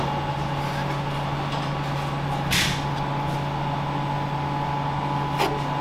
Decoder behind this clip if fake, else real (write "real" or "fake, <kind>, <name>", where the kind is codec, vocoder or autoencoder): real